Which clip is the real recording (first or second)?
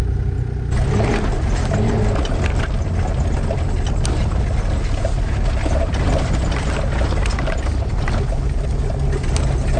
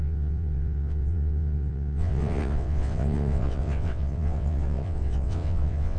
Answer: first